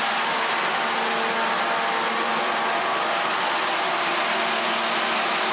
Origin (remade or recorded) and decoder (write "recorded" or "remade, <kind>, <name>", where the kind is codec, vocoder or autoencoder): recorded